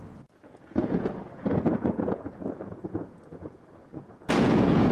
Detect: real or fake fake